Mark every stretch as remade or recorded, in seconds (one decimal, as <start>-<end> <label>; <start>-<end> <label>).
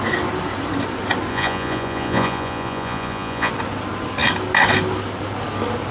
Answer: 0.0-1.3 recorded; 1.3-3.5 remade; 3.5-5.9 recorded